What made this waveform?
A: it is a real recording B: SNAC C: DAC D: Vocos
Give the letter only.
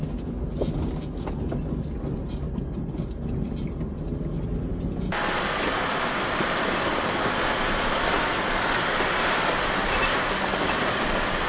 A